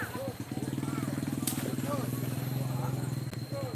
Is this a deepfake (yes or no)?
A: no